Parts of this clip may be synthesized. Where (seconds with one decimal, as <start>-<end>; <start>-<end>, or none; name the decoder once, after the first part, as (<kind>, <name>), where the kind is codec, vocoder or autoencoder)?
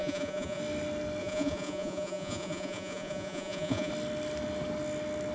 0.0-0.6 (vocoder, Vocos); 1.2-3.9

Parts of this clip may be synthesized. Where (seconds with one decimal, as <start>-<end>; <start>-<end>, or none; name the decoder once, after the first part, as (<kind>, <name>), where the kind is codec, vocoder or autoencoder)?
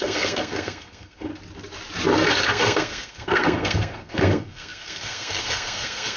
0.0-1.3 (codec, SNAC); 2.3-6.2